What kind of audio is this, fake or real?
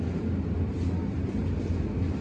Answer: real